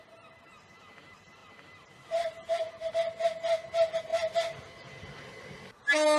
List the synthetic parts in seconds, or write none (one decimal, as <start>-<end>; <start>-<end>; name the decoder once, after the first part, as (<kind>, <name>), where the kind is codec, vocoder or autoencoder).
none